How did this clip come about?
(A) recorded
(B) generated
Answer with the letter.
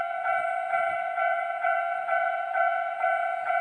B